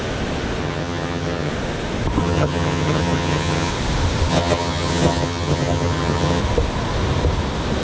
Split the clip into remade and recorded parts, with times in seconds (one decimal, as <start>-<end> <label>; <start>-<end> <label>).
0.0-0.6 recorded; 0.6-1.5 remade; 1.5-2.2 recorded; 2.2-3.7 remade; 3.7-4.3 recorded; 4.3-6.4 remade; 6.4-7.8 recorded